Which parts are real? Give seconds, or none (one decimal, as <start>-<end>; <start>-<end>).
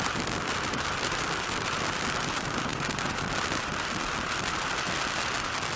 none